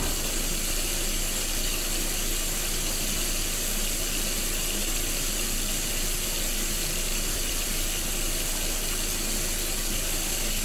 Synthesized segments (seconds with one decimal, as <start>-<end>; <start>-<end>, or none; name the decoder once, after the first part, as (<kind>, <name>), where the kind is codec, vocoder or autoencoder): 7.1-7.7 (vocoder, BigVGAN v2)